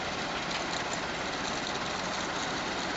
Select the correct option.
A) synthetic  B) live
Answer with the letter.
B